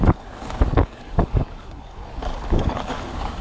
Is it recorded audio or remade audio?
remade